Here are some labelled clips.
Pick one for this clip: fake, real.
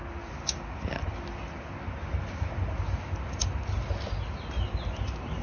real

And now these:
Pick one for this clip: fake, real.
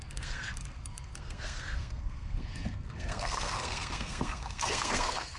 fake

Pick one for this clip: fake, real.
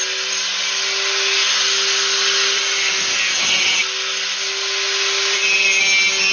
real